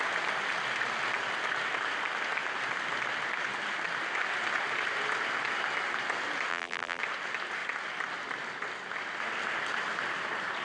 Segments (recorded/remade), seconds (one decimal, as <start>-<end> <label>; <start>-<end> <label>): 0.0-6.5 recorded; 6.5-7.0 remade; 7.0-10.6 recorded